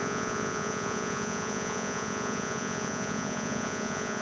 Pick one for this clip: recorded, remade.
remade